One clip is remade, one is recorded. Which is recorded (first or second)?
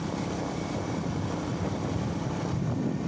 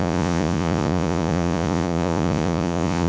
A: first